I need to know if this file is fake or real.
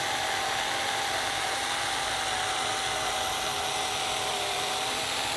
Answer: real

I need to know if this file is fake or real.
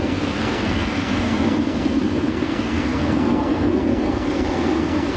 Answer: fake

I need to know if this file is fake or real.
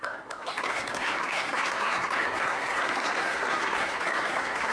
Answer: fake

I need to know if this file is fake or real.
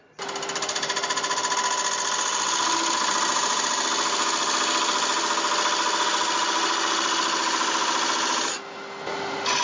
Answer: real